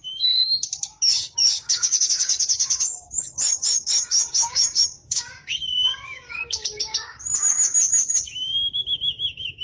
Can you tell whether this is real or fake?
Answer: fake